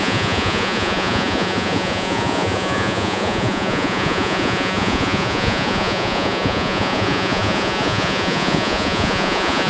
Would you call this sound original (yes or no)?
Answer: no